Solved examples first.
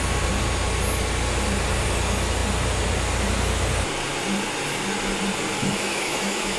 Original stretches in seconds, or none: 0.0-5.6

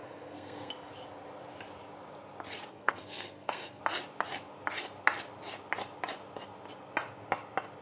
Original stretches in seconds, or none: 0.7-2.7; 3.8-7.8

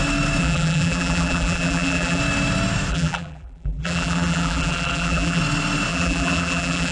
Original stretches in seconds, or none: 0.0-0.4; 2.2-2.9; 5.4-5.9

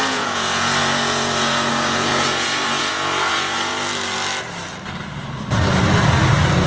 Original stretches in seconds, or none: 3.7-6.7

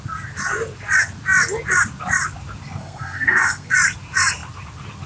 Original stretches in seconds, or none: 0.0-2.8; 3.7-5.1

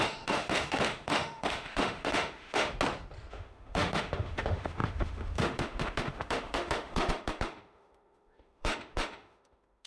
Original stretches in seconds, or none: 2.7-3.3